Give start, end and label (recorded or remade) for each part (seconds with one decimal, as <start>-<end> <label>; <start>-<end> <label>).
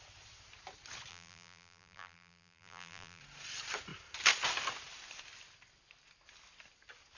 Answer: 0.0-1.1 recorded; 1.1-3.2 remade; 3.2-7.2 recorded